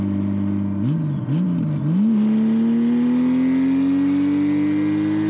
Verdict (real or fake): real